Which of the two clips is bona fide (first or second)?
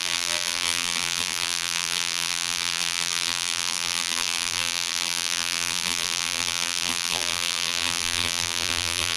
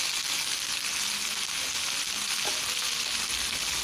second